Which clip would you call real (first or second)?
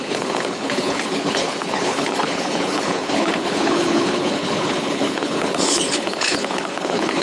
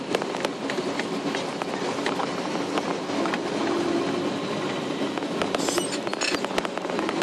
second